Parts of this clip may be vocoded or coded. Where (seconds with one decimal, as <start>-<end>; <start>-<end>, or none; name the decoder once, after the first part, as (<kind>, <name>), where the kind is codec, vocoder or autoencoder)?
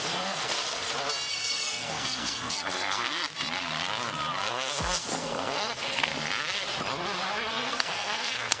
0.0-0.6 (codec, SNAC); 1.3-3.2; 4.5-6.1; 7.5-8.6